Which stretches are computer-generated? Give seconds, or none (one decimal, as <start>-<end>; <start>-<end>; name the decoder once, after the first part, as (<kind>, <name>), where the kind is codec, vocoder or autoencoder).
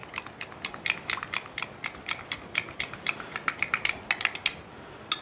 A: none